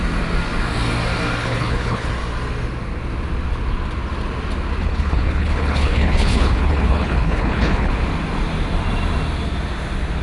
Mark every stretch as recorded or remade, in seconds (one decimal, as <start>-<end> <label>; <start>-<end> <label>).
0.0-1.4 recorded; 1.4-2.1 remade; 2.1-4.8 recorded; 4.8-7.9 remade; 7.9-10.2 recorded